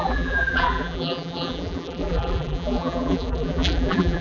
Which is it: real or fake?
fake